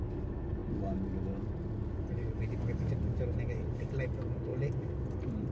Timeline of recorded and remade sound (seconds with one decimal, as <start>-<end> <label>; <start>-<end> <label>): 0.0-4.5 recorded; 4.5-5.5 remade